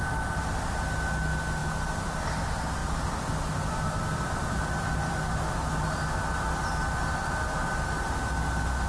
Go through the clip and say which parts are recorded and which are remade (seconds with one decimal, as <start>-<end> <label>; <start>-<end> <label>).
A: 0.0-2.8 recorded; 2.8-7.3 remade; 7.3-8.9 recorded